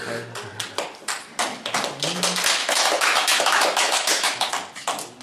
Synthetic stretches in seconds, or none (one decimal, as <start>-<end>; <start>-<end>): 2.6-4.5